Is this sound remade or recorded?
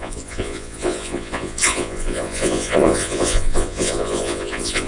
remade